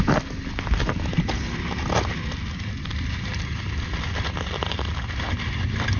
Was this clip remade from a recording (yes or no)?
no